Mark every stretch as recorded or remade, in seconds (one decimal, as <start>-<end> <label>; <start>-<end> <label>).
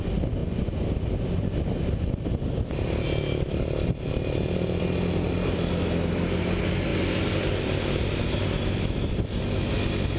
0.0-10.2 recorded